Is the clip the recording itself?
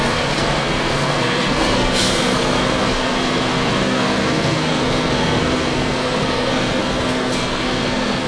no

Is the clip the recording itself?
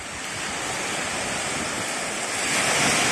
yes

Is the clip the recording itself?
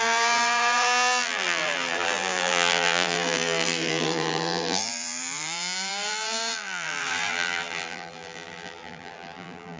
no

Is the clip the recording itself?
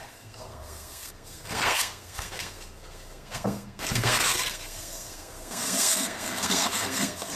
no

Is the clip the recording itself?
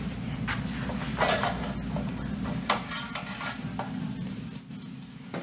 yes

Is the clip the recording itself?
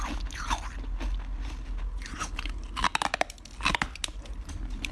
yes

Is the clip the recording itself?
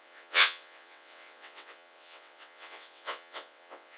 no